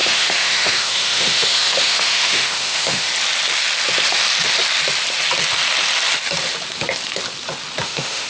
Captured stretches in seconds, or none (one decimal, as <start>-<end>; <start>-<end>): 3.1-7.8